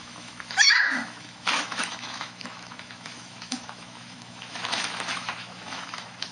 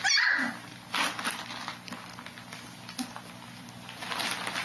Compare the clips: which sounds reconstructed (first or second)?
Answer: first